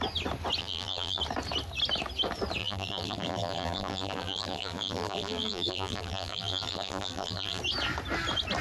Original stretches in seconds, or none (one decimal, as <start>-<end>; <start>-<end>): 0.0-0.6; 1.2-2.6; 7.6-8.6